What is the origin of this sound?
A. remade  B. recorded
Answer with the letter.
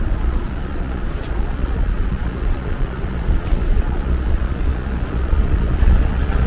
A